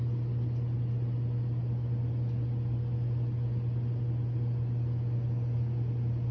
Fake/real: real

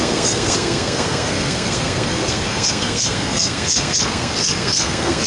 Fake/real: fake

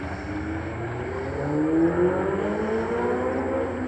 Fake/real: real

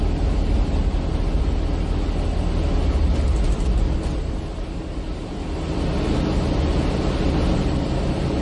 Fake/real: real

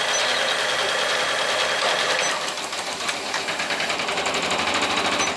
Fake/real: real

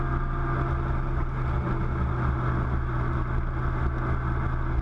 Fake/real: real